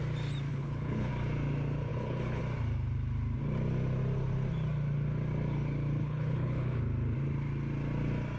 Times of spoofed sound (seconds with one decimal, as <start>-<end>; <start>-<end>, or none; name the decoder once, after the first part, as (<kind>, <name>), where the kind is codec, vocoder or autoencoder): 0.5-1.1 (codec, HILCodec); 1.9-2.4; 6.0-6.8